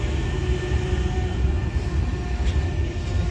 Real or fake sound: real